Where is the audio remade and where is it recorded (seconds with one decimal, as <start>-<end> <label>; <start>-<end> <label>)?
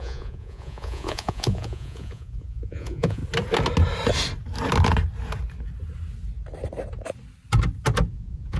0.0-3.2 remade; 3.2-8.1 recorded; 8.1-8.6 remade